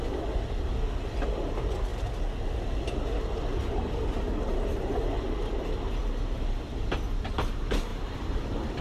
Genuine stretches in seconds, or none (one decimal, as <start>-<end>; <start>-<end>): 0.0-6.0; 6.7-7.9